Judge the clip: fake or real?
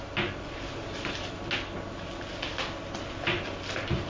real